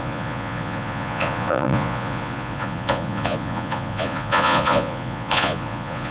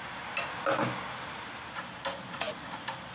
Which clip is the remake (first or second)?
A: first